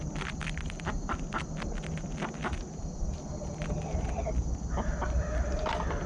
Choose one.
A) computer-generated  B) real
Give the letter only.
B